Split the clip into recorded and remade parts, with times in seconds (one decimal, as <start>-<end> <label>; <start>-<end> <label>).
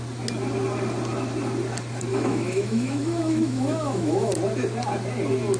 0.0-2.1 recorded; 2.1-4.3 remade; 4.3-5.6 recorded